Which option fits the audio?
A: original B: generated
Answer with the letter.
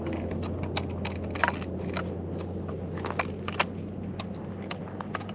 A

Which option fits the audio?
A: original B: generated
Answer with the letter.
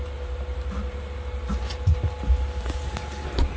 A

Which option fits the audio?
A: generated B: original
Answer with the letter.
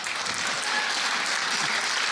B